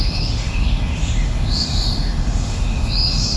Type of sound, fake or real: fake